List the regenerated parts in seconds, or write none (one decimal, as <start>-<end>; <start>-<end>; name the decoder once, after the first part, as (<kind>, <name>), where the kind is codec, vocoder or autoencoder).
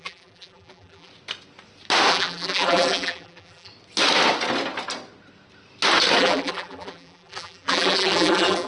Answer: 0.0-1.1 (vocoder, BigVGAN v2); 2.1-3.7; 6.2-8.7